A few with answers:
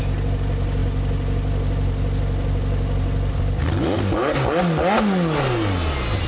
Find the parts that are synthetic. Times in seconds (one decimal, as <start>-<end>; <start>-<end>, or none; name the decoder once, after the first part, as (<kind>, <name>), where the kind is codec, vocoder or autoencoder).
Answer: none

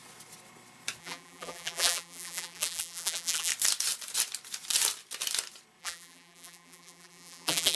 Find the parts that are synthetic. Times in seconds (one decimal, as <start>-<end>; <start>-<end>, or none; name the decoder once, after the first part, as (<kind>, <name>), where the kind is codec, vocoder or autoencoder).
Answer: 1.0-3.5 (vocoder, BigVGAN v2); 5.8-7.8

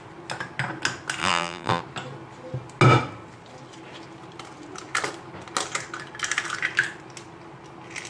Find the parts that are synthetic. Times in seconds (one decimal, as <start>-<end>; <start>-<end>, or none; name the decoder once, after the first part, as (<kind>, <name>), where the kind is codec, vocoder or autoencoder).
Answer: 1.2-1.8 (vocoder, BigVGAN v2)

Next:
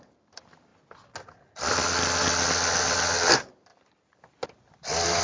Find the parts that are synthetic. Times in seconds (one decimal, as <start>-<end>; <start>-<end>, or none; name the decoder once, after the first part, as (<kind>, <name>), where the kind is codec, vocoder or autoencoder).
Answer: 0.0-0.7 (vocoder, BigVGAN v2); 3.3-5.2

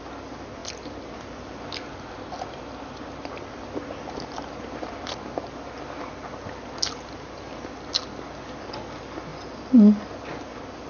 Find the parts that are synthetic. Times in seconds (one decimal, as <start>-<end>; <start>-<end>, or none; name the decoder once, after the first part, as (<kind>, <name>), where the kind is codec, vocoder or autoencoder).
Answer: none